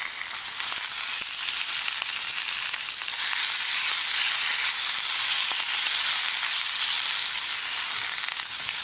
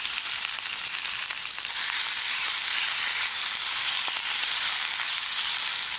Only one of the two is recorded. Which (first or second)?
first